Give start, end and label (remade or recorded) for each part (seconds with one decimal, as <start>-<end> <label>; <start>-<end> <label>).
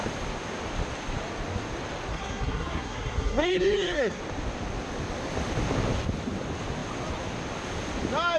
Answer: 0.0-2.1 recorded; 2.1-4.2 remade; 4.2-8.4 recorded